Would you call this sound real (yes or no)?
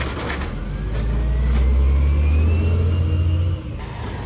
yes